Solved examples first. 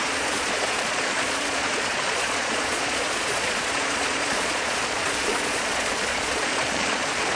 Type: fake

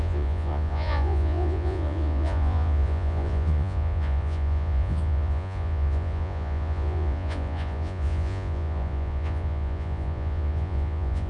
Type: fake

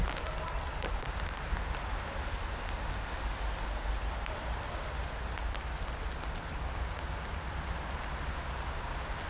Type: real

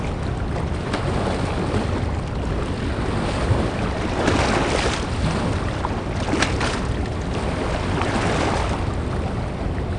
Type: real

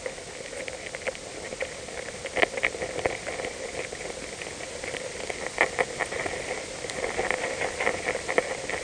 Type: real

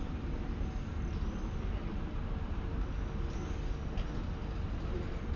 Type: real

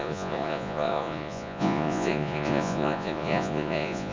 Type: fake